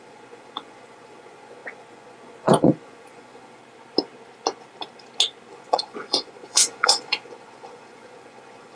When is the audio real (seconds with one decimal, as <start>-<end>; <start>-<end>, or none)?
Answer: 3.6-5.5